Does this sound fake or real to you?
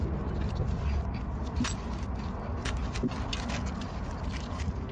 real